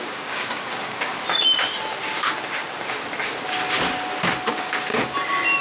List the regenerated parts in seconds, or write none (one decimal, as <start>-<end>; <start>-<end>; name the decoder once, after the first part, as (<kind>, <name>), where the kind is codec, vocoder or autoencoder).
0.0-1.1 (codec, DAC); 4.5-4.9